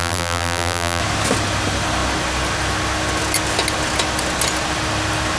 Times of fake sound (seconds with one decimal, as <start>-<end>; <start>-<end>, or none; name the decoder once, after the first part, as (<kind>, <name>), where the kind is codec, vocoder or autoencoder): 0.0-1.0 (vocoder, BigVGAN v2)